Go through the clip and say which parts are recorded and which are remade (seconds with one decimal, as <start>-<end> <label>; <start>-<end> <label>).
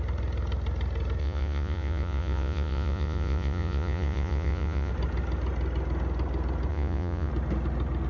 0.0-1.2 recorded; 1.2-4.9 remade; 4.9-6.7 recorded; 6.7-7.3 remade; 7.3-8.1 recorded